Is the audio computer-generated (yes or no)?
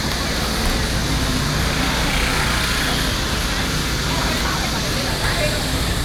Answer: no